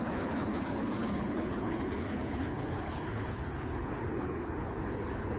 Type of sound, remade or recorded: remade